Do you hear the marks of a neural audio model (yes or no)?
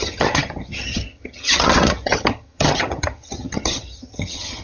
yes